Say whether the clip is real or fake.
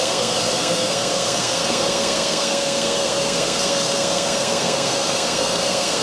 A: fake